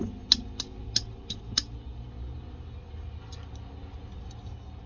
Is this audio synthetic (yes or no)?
no